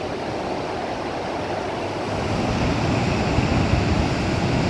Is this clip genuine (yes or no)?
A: yes